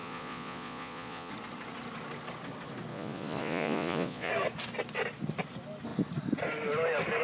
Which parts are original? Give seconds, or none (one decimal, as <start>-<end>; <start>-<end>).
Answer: 1.3-2.9; 4.3-7.2

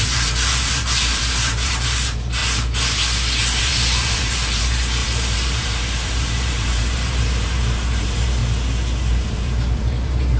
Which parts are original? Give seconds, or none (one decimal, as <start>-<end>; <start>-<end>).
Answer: 2.4-3.6; 8.4-9.0